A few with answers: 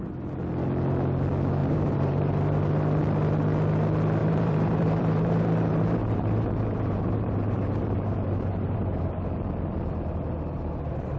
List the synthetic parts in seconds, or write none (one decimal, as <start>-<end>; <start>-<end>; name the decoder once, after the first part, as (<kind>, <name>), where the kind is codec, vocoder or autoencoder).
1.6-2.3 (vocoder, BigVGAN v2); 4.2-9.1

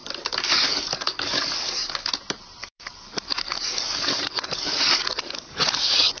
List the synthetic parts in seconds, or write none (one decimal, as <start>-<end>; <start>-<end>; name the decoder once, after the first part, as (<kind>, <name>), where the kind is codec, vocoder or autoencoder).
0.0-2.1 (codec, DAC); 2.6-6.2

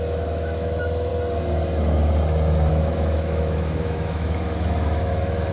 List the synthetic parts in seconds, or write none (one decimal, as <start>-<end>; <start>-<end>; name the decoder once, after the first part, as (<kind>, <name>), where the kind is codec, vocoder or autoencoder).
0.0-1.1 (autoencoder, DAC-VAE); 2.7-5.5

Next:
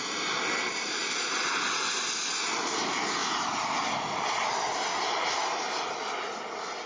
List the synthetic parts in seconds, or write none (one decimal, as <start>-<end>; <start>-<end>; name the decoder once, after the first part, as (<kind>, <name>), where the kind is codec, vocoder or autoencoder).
none

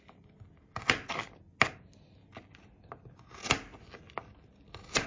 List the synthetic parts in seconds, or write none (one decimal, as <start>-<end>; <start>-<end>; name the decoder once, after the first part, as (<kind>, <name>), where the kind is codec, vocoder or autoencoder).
none